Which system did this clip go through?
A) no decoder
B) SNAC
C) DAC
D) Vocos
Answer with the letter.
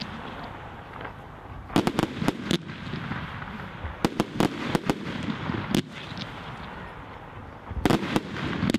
A